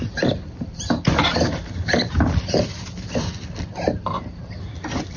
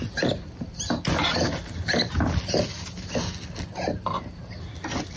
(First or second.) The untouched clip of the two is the second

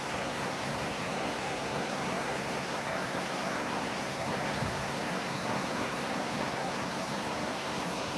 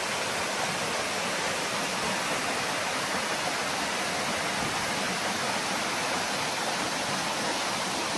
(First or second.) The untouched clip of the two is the second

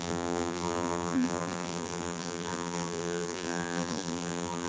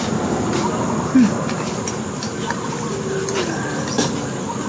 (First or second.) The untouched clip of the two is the second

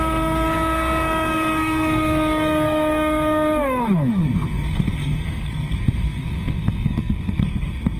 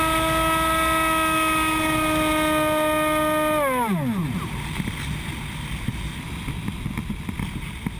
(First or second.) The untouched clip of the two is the second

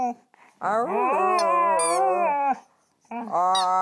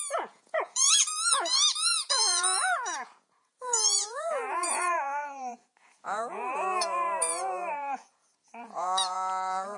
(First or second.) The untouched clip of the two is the first